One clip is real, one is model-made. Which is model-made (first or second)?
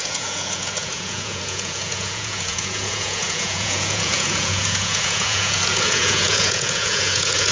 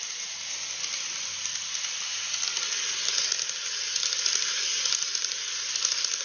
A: first